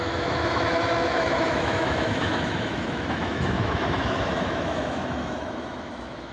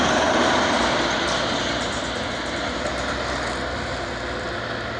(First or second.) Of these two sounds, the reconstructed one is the first